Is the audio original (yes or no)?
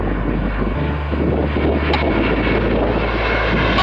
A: yes